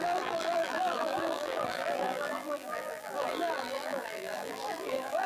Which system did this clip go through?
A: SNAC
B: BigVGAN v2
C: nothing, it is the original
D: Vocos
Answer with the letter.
B